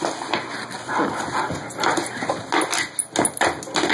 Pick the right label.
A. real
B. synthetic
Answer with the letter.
A